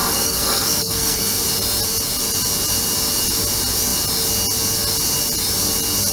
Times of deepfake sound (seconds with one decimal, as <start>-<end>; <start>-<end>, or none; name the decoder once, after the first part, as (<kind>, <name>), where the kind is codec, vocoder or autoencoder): 0.0-1.4 (codec, SNAC)